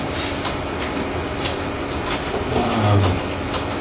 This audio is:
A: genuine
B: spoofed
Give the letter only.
A